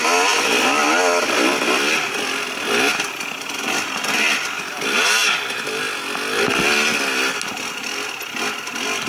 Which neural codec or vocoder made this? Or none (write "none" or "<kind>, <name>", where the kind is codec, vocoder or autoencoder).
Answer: none